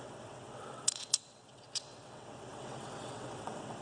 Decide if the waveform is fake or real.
fake